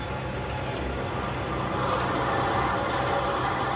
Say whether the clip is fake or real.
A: real